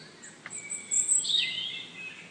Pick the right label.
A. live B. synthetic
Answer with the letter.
A